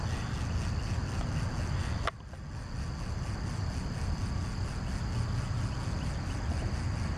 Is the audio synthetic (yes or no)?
no